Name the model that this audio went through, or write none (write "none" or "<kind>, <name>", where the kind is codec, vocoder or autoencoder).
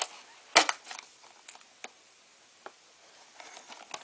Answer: none